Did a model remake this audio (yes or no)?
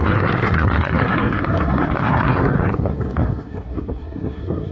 yes